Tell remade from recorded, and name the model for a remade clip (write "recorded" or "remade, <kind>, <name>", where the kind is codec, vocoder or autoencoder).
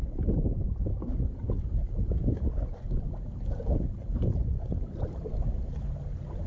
recorded